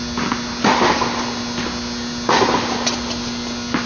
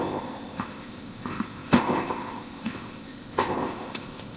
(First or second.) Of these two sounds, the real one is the first